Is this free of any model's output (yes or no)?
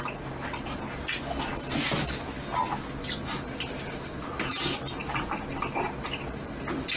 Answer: yes